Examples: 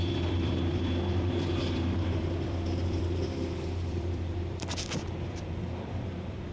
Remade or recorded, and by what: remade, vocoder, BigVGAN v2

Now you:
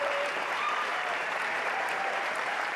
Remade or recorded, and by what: remade, vocoder, BigVGAN v2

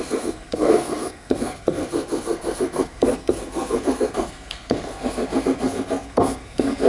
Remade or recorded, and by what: remade, codec, SNAC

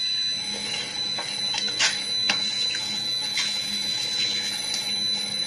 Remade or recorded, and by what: remade, autoencoder, DAC-VAE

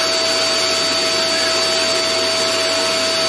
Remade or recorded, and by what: recorded